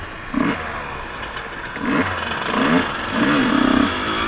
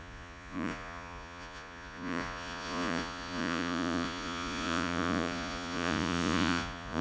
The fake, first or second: second